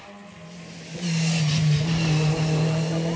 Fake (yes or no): no